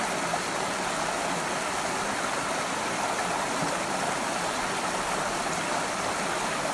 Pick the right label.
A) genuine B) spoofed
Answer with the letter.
A